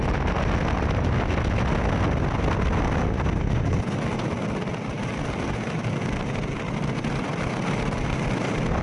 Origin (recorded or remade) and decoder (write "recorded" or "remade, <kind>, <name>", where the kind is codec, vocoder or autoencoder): recorded